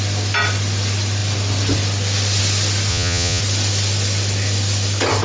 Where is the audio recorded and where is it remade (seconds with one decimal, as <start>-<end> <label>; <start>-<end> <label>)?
0.0-2.9 recorded; 2.9-3.4 remade; 3.4-5.2 recorded